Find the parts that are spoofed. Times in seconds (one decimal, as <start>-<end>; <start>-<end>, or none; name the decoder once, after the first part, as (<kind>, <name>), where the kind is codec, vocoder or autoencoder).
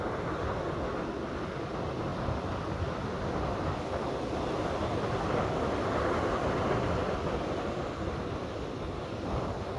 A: none